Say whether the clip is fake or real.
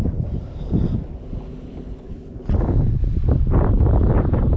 real